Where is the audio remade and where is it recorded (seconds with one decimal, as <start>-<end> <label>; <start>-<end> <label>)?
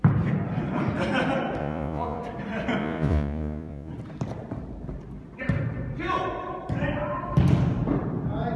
0.0-1.6 recorded; 1.6-2.2 remade; 2.2-2.8 recorded; 2.8-3.9 remade; 3.9-8.6 recorded